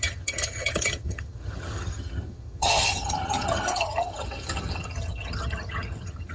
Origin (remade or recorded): remade